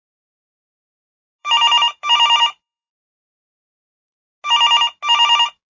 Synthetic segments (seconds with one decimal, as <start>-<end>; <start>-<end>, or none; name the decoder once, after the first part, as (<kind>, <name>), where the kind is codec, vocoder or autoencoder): 1.4-2.9 (vocoder, BigVGAN v2)